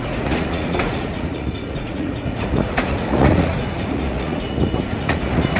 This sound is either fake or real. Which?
fake